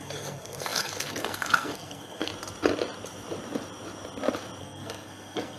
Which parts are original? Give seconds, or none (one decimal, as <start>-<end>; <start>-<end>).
2.3-4.6